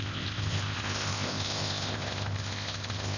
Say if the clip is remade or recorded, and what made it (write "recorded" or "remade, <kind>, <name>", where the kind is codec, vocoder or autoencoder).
remade, codec, ZipCodec